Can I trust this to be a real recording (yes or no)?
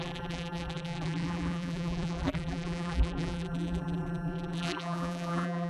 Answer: no